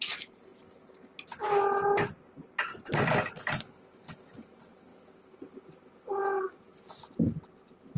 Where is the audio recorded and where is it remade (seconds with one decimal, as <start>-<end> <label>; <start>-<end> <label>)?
0.0-8.0 recorded